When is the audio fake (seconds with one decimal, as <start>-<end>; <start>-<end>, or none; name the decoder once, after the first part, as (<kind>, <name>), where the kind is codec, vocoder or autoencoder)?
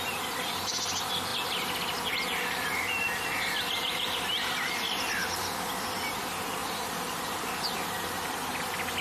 6.6-7.2 (vocoder, BigVGAN v2)